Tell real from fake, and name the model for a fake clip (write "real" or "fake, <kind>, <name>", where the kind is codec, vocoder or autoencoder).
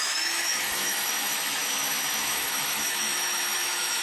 fake, autoencoder, DAC-VAE